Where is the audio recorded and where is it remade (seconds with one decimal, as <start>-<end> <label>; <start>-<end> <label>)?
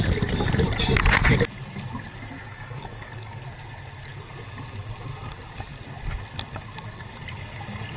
0.0-2.5 recorded; 2.5-3.4 remade; 3.4-8.0 recorded